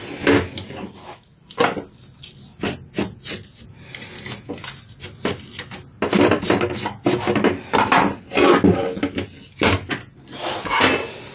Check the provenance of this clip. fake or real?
real